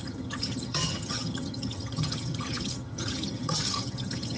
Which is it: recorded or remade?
remade